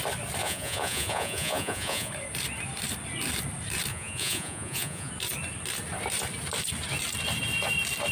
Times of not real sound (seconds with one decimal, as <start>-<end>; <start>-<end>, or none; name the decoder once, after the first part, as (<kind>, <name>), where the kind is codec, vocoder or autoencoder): 0.4-2.1 (vocoder, Vocos); 3.9-5.1